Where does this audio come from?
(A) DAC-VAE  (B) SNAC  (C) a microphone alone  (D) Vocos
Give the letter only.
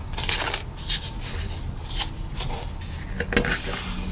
C